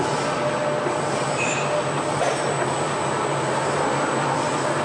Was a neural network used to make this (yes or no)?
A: no